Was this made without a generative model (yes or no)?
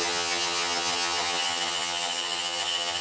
no